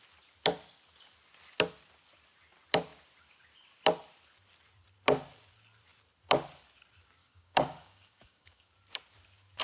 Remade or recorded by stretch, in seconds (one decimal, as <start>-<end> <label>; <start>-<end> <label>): 0.0-7.2 recorded; 7.2-8.7 remade; 8.7-9.6 recorded